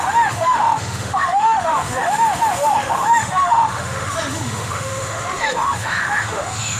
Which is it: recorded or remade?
remade